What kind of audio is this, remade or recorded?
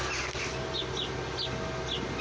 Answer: recorded